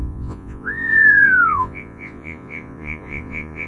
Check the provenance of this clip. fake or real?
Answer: fake